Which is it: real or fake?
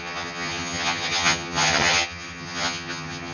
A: fake